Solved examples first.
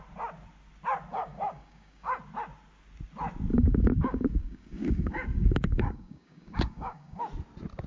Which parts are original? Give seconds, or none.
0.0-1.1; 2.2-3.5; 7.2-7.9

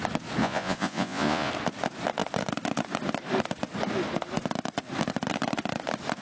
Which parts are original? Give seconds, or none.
0.0-0.4; 1.5-6.2

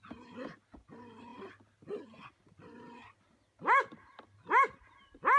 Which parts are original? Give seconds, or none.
0.0-5.4

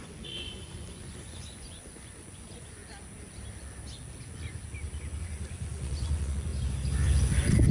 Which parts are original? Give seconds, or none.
2.8-5.2; 6.5-7.7

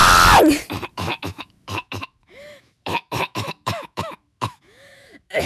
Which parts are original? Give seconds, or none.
0.0-0.9

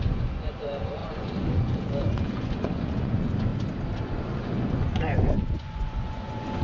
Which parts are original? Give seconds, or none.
3.5-4.0

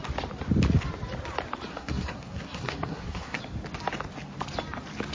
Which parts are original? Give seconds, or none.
0.0-1.7; 3.4-5.1